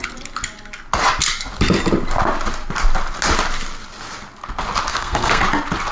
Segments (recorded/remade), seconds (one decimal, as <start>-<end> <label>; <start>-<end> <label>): 0.0-4.9 recorded; 4.9-5.4 remade; 5.4-5.9 recorded